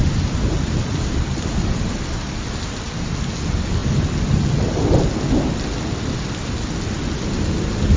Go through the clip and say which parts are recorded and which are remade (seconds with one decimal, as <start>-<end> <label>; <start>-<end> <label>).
0.0-2.1 remade; 2.1-8.0 recorded